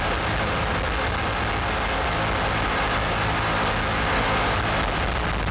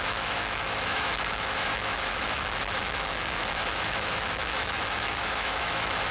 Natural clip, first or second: first